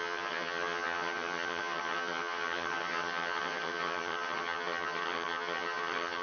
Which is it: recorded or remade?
remade